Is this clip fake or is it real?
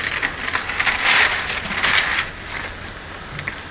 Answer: real